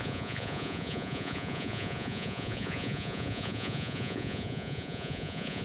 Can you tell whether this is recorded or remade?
remade